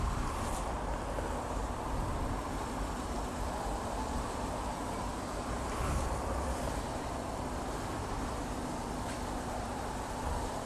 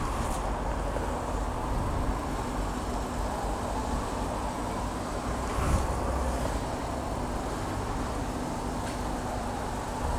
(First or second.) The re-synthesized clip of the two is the first